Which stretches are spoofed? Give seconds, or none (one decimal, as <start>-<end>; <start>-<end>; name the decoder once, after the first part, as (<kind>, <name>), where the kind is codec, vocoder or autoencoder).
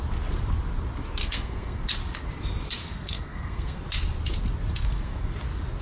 1.2-1.8 (codec, SNAC); 2.8-3.8; 4.7-5.3